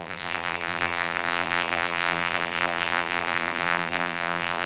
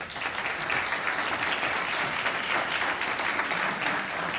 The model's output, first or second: first